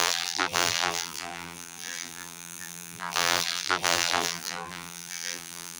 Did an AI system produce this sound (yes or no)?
yes